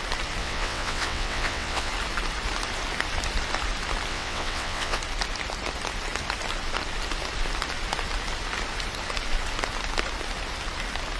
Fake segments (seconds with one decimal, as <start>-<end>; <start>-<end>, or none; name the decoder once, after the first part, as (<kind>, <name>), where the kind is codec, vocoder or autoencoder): 0.4-1.9 (vocoder, WaveNeXt); 4.1-5.0